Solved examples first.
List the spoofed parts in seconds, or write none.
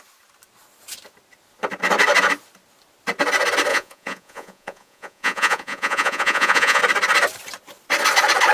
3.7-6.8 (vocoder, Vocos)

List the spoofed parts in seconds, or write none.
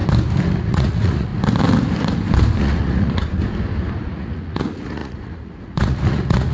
0.6-1.3 (vocoder, Vocos); 2.6-3.4; 4.1-6.5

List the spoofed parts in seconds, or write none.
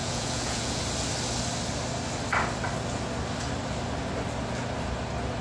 0.0-0.8 (vocoder, Vocos)